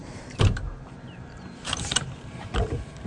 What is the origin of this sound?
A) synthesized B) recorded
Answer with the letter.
A